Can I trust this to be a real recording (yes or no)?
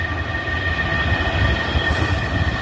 yes